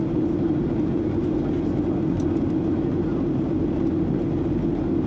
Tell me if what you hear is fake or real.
real